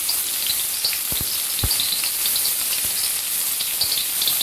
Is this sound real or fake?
real